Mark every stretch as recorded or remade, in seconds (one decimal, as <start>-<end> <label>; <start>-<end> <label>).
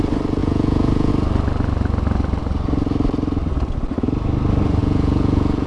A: 0.0-0.4 recorded; 0.4-1.1 remade; 1.1-4.8 recorded; 4.8-5.7 remade